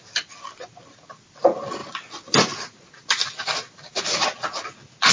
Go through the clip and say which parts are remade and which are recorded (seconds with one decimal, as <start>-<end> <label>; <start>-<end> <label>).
0.0-5.1 recorded